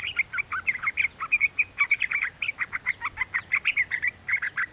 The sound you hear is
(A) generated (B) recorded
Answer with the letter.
B